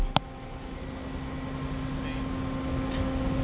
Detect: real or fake real